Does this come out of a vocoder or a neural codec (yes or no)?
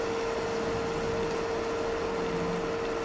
no